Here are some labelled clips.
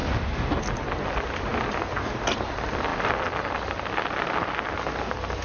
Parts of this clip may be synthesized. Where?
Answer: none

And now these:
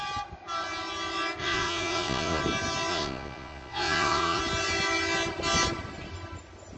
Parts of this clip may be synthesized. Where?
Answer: 1.4-2.4; 2.9-4.4

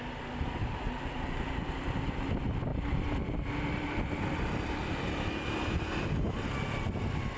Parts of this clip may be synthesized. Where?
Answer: none

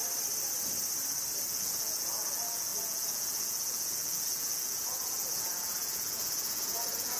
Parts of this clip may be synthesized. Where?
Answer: 1.5-7.2

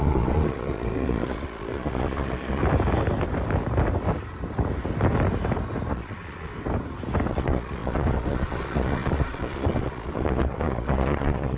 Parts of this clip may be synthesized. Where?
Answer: 0.0-2.6; 5.9-6.5; 7.3-11.6